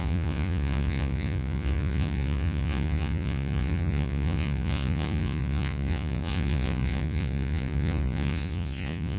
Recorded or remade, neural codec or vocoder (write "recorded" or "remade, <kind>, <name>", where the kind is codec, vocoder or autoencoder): remade, vocoder, Vocos